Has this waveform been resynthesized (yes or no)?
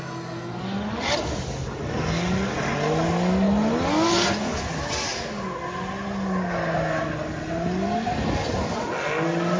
no